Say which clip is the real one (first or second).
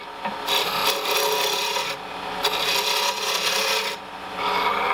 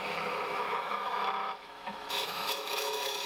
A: first